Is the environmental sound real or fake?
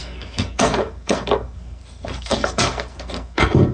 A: fake